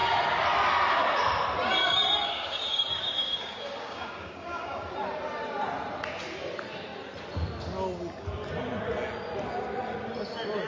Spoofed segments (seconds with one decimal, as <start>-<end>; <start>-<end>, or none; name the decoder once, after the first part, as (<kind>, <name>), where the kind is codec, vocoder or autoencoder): 1.8-4.9 (codec, DAC)